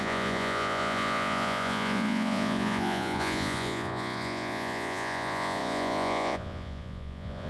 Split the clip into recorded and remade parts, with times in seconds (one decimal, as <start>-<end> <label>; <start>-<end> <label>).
0.0-7.5 remade